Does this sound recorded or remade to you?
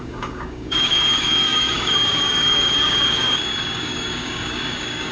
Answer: remade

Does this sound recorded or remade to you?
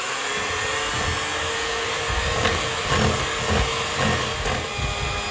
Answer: recorded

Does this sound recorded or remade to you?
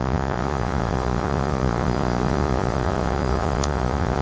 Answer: remade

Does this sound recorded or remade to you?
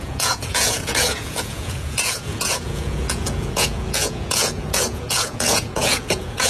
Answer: remade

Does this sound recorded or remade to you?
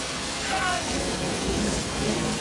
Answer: remade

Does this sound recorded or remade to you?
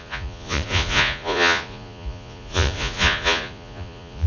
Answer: remade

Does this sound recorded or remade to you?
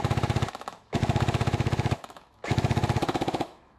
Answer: remade